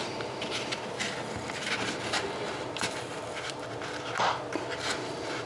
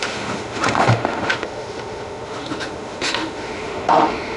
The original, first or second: first